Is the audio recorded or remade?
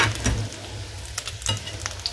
recorded